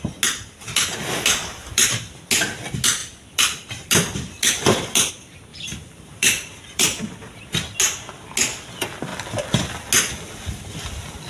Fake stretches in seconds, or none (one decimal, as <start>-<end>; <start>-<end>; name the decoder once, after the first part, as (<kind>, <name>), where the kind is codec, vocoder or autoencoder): 1.6-2.2 (vocoder, BigVGAN v2); 3.0-5.1; 5.5-7.3